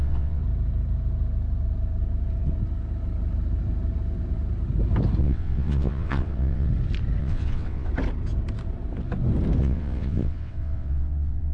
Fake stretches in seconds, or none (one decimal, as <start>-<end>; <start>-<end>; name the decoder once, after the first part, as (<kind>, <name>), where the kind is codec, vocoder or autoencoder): 0.0-0.4 (vocoder, WaveNeXt); 5.2-6.7; 7.2-7.9; 9.6-11.5